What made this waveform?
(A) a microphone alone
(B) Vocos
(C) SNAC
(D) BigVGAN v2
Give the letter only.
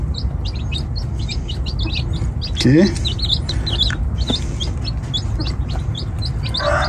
A